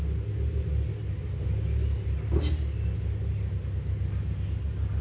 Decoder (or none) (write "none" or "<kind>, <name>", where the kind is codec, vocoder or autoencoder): none